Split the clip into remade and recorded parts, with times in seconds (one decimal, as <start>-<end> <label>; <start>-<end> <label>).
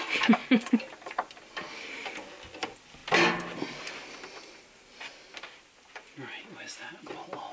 0.0-0.4 recorded; 0.4-1.3 remade; 1.3-7.5 recorded